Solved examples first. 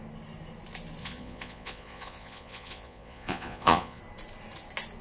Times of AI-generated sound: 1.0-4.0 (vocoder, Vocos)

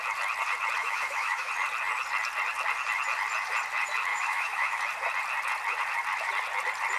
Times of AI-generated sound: 0.8-1.5 (autoencoder, DAC-VAE); 4.1-4.8